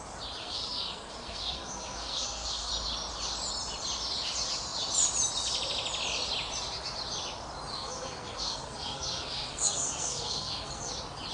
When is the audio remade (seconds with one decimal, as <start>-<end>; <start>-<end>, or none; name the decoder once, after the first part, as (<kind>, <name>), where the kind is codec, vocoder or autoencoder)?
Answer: 0.4-2.7 (codec, SNAC); 7.7-10.9